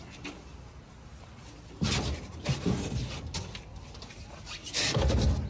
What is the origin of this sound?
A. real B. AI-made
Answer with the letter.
A